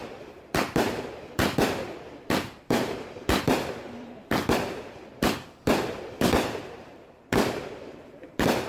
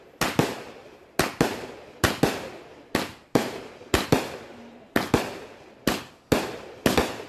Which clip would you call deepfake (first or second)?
first